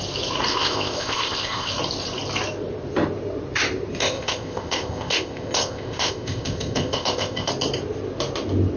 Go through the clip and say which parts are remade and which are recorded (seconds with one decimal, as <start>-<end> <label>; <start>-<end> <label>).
0.0-0.5 recorded; 0.5-1.7 remade; 1.7-4.0 recorded; 4.0-7.5 remade; 7.5-8.8 recorded